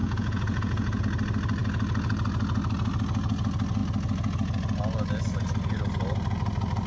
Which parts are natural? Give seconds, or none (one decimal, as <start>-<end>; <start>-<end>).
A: 1.0-6.9